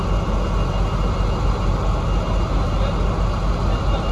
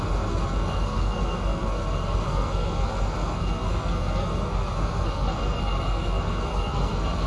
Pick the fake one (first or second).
second